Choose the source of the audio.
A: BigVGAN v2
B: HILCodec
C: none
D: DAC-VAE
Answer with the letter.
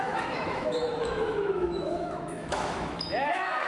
D